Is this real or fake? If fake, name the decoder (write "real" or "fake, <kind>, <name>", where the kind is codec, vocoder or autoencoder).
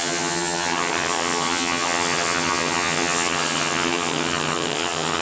fake, vocoder, HiFi-GAN